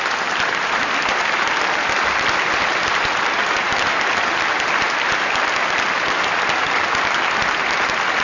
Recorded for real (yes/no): yes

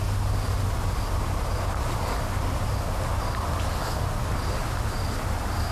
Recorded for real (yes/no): yes